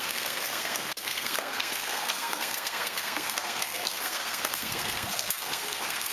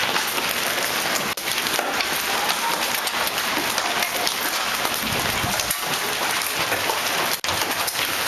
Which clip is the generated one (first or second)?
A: first